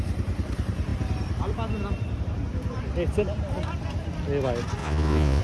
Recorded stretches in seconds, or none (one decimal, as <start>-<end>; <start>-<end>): 0.0-4.8